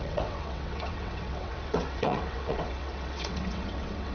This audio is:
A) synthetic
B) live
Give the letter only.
A